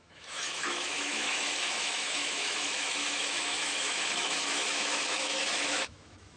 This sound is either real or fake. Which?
fake